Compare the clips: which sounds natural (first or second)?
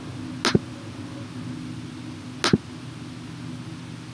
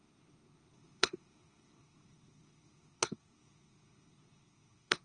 first